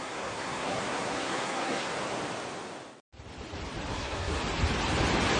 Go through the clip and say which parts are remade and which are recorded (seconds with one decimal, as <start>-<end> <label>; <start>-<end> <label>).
0.0-1.9 remade; 1.9-3.9 recorded; 3.9-4.4 remade; 4.4-5.4 recorded

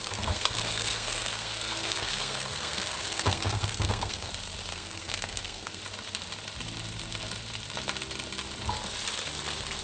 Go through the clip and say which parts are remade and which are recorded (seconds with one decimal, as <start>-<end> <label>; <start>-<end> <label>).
0.0-4.3 remade; 4.3-4.7 recorded; 4.7-5.8 remade; 5.8-9.8 recorded